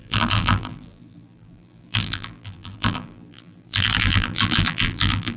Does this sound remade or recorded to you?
remade